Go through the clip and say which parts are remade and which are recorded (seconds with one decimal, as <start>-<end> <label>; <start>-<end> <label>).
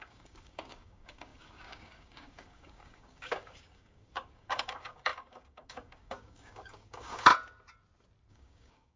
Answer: 0.0-7.3 remade; 7.3-8.3 recorded; 8.3-9.0 remade